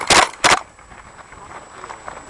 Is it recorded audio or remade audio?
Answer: recorded